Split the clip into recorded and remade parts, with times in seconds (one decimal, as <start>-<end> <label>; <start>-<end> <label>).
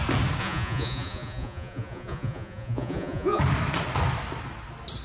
0.0-0.4 recorded; 0.4-3.4 remade; 3.4-5.0 recorded